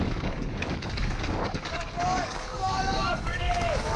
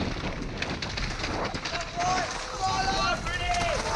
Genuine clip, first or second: second